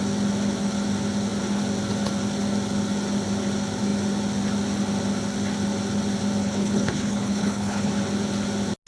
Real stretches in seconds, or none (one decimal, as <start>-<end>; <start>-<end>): 0.0-6.4; 7.9-8.9